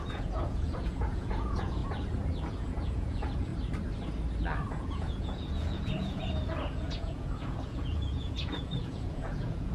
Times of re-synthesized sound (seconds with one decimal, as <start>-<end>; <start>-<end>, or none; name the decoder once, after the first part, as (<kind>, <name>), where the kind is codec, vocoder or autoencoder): 0.0-1.8 (vocoder, Vocos); 2.5-3.5; 4.7-9.7